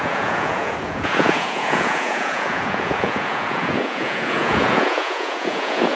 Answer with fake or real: fake